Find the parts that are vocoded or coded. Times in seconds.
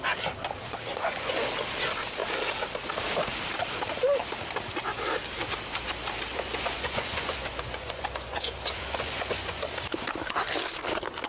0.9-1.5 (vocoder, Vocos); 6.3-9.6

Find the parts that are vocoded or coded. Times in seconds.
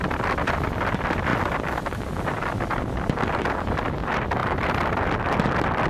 none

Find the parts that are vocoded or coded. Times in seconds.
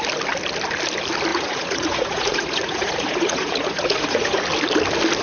1.3-4.4 (vocoder, Vocos)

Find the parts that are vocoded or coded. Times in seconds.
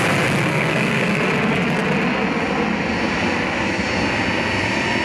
0.5-1.2 (codec, SNAC)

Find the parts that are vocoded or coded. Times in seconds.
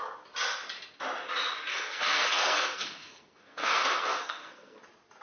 1.7-4.8 (codec, SNAC)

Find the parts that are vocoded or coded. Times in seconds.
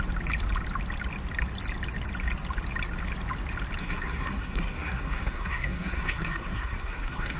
3.8-7.4 (codec, SNAC)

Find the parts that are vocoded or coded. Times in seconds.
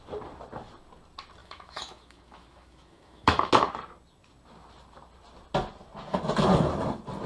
1.4-3.5 (autoencoder, DAC-VAE)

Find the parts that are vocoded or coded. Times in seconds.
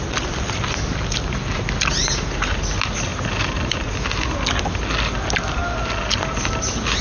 3.1-3.9 (vocoder, BigVGAN v2)